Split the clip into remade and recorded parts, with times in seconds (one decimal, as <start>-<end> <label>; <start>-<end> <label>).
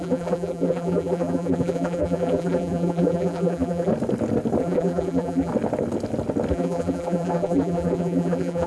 0.0-3.9 remade; 3.9-4.6 recorded; 4.6-5.5 remade; 5.5-6.5 recorded; 6.5-8.7 remade